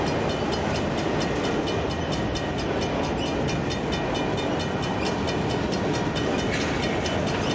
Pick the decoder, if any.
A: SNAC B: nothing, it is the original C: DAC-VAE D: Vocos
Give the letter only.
B